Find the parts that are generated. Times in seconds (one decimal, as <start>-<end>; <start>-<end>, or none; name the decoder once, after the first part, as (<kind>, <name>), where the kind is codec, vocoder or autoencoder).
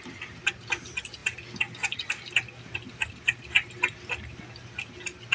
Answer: none